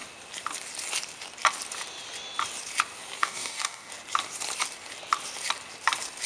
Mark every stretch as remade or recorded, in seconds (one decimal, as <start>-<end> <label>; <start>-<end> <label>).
0.0-3.2 recorded; 3.2-3.9 remade; 3.9-6.3 recorded